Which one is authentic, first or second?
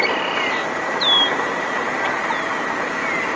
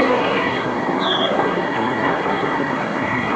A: first